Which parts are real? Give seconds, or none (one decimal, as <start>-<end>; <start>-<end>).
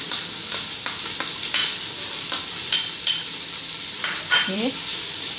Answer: 0.0-1.6; 4.7-5.4